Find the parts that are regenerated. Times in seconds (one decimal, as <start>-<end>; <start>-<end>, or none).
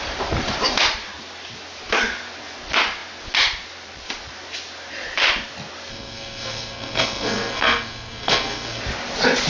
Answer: 5.9-8.8